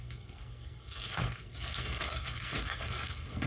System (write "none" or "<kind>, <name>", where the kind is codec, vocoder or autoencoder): codec, SNAC